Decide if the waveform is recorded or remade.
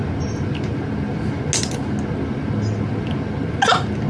recorded